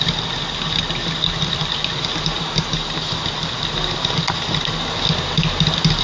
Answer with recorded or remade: recorded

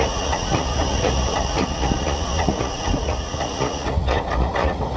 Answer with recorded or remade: remade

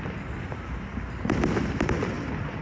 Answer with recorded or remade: recorded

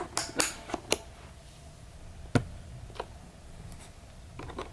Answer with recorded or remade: recorded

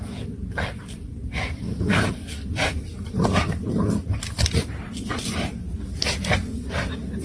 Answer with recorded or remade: recorded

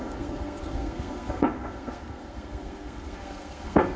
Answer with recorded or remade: remade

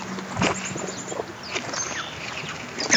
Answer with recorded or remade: recorded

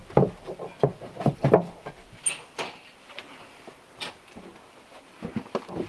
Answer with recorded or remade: recorded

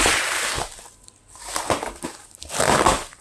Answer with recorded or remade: recorded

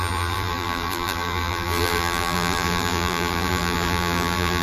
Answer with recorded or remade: remade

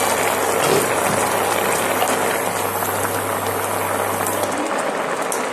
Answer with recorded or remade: recorded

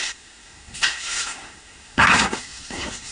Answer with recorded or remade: remade